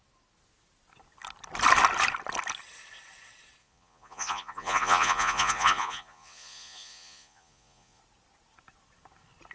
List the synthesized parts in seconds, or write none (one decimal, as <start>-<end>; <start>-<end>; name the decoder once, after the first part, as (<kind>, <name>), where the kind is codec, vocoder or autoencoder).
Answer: 3.6-8.0 (vocoder, Vocos)